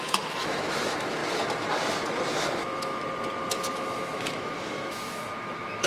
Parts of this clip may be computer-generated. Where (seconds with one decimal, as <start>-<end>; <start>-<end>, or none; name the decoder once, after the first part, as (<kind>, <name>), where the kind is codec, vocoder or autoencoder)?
0.0-1.2 (autoencoder, DAC-VAE); 2.4-3.0; 3.5-5.9